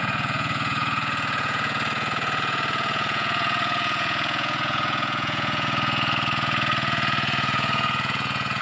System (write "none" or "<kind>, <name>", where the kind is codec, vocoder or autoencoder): vocoder, Vocos